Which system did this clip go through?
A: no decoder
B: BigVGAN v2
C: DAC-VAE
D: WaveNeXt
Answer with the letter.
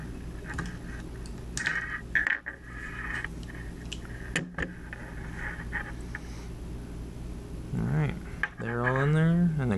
A